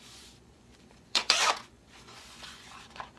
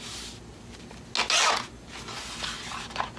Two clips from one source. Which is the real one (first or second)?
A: second